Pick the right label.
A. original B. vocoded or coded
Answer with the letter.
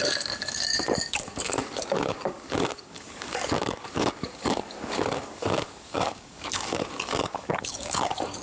B